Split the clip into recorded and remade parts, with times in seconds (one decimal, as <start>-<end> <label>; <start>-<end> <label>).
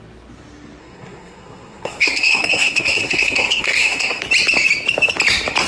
0.0-0.8 recorded; 0.8-4.2 remade; 4.2-5.7 recorded